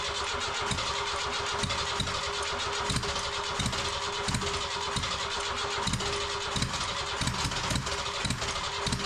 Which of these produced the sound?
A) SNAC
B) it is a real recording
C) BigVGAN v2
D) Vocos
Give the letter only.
B